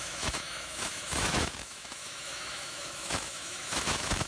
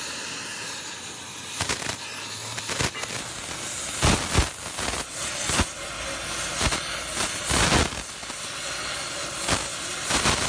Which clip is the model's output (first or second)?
first